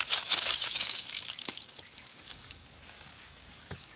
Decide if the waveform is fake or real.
fake